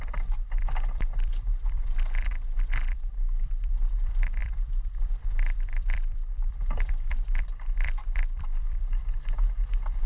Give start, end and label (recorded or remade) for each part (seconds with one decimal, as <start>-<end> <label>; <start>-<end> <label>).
0.0-10.1 remade